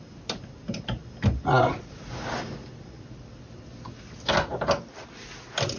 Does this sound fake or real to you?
real